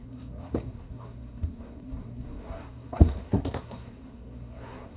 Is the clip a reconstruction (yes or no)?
yes